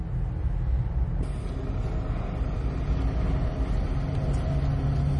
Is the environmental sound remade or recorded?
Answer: recorded